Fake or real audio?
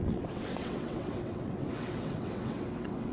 fake